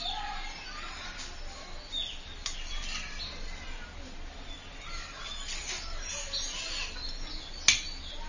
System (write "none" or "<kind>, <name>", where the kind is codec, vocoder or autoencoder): none